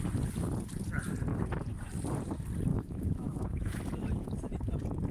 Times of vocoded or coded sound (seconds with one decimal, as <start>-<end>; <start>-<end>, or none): 2.7-3.8